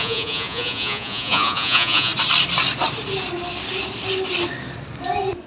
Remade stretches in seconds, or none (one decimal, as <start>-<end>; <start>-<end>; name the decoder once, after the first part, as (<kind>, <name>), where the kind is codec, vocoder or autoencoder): 0.0-2.1 (vocoder, Vocos)